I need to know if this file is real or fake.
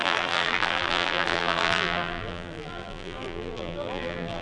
fake